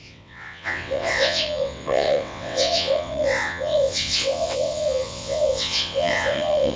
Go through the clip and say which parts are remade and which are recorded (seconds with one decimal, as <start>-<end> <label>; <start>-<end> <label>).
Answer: 0.0-6.8 remade